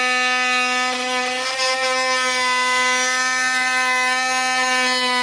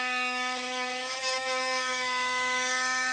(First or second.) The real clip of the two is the first